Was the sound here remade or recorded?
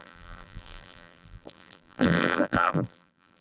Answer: remade